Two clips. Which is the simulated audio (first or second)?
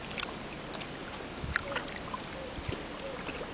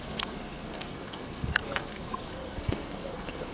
second